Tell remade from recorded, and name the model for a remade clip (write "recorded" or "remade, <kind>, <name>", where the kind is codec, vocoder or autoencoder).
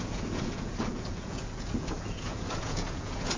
remade, vocoder, Vocos